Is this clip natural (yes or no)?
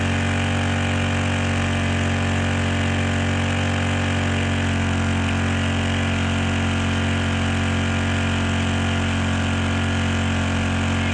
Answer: yes